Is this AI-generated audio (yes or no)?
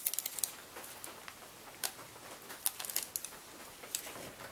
no